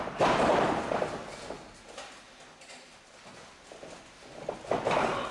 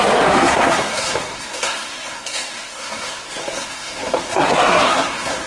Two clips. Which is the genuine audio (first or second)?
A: first